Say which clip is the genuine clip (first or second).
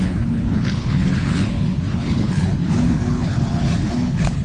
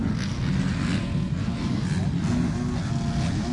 second